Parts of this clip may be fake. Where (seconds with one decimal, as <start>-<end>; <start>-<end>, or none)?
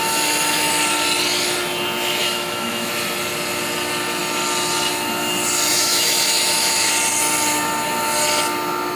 2.2-2.9; 5.7-6.9